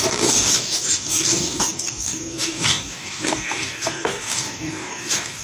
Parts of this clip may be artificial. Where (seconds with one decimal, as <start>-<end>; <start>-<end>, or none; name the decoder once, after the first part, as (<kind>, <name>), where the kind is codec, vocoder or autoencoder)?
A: 0.0-5.4 (codec, DAC)